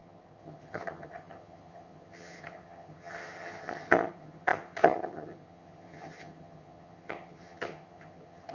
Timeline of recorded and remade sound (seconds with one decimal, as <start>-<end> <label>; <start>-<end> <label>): 0.0-8.5 remade